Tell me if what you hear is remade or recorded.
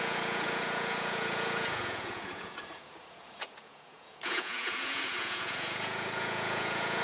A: remade